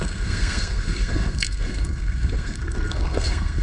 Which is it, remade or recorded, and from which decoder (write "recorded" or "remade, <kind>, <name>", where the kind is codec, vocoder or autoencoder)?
remade, codec, SNAC